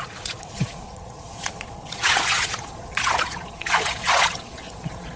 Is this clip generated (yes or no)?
yes